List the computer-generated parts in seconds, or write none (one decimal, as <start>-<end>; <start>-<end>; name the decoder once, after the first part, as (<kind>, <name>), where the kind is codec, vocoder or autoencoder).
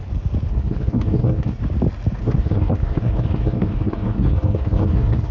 0.5-1.6 (codec, SNAC); 2.2-5.3